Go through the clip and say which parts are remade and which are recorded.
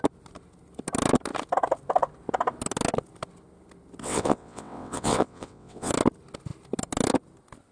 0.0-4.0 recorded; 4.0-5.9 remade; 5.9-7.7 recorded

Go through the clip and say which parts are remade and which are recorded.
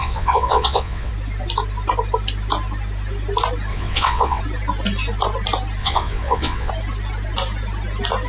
0.0-1.1 remade; 1.1-3.7 recorded; 3.7-4.4 remade; 4.4-5.8 recorded; 5.8-6.7 remade; 6.7-8.3 recorded